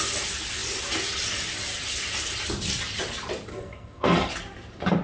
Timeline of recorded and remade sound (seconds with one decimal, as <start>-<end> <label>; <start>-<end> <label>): 0.0-3.5 recorded; 3.5-4.3 remade; 4.3-5.0 recorded